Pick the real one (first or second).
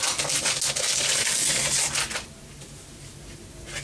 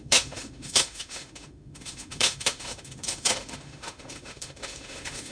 first